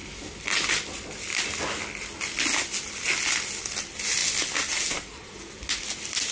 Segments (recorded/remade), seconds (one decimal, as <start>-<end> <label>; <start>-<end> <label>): 0.0-6.3 recorded